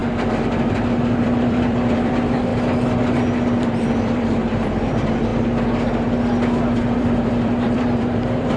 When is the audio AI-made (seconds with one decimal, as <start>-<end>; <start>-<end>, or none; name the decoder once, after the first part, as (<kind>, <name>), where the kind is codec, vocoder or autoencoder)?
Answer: 0.7-2.5 (vocoder, BigVGAN v2); 3.6-5.3; 6.6-8.6